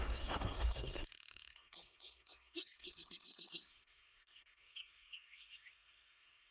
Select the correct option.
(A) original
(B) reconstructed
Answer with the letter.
B